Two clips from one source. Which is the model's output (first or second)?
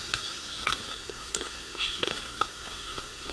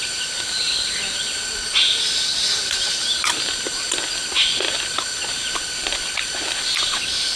first